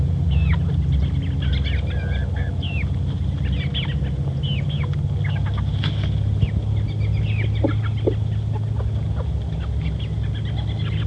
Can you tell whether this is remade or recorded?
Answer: recorded